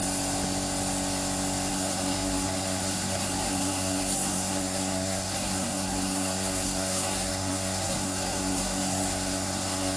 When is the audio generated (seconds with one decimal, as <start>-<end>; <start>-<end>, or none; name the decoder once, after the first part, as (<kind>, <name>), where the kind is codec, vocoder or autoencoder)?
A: 1.7-10.0 (codec, SNAC)